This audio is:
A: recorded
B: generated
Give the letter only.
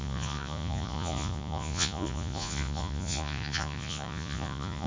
B